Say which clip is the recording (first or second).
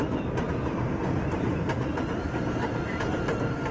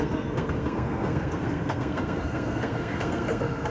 first